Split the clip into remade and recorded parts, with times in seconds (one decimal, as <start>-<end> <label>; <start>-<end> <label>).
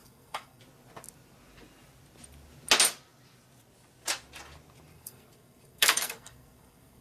0.0-0.6 remade; 0.6-4.9 recorded; 4.9-7.0 remade